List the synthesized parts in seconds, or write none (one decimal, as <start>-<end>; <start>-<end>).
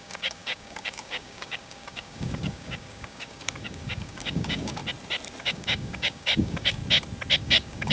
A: 0.0-4.8; 5.4-6.8; 7.4-7.9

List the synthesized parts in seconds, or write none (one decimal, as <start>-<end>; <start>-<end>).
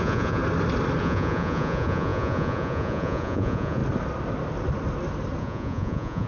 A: 0.0-0.4; 1.0-3.8; 5.4-6.3